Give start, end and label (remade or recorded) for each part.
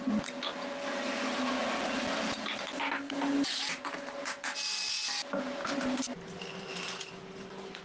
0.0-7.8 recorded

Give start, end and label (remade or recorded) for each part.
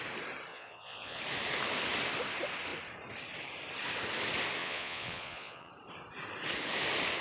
0.0-0.5 recorded; 0.5-1.2 remade; 1.2-4.6 recorded; 4.6-5.7 remade; 5.7-7.2 recorded